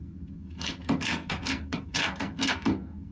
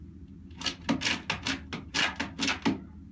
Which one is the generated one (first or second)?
first